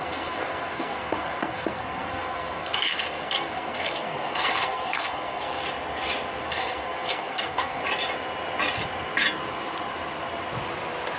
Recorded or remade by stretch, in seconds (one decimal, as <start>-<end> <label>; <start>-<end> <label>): 0.0-5.6 remade; 5.6-6.4 recorded; 6.4-7.8 remade; 7.8-11.2 recorded